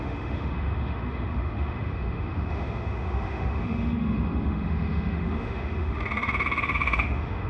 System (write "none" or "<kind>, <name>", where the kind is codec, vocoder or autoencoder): autoencoder, DAC-VAE